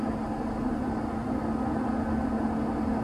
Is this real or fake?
real